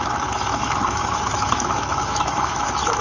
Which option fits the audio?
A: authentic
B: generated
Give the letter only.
B